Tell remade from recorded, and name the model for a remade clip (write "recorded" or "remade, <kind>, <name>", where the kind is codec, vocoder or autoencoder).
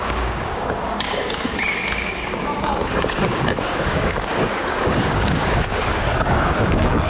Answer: remade, codec, DAC